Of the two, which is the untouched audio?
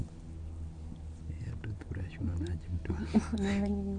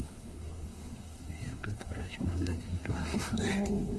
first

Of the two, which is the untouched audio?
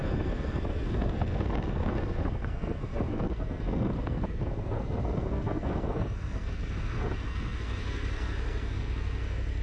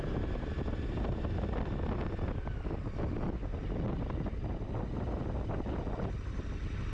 second